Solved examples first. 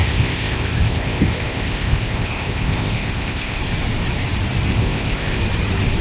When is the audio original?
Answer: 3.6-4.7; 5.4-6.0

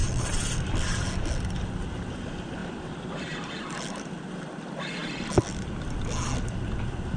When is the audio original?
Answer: 1.1-2.6; 3.2-7.2

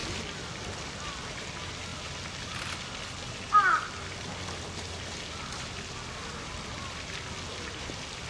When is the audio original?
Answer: 0.0-8.3

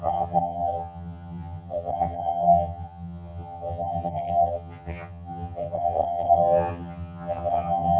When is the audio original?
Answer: none

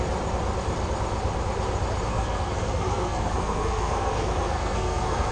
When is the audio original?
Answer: 0.0-2.1

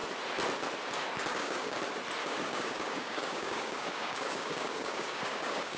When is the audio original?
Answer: 0.0-1.3; 1.8-2.2